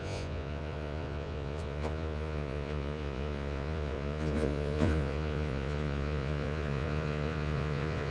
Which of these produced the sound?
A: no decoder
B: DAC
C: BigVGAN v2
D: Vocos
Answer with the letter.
D